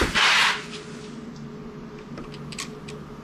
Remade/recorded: recorded